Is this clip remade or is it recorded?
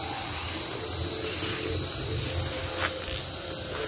recorded